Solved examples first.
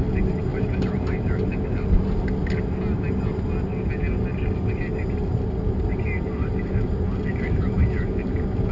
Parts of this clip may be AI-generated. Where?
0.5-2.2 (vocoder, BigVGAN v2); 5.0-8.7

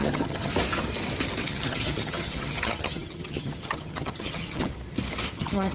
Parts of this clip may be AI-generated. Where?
0.0-0.5 (vocoder, HiFi-GAN); 1.4-4.7; 5.3-5.7

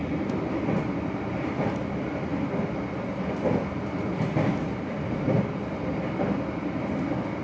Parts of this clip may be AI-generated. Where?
none